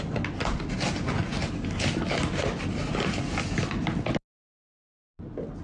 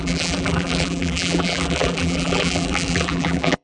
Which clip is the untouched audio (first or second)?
first